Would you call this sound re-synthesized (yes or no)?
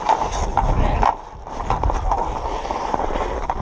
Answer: no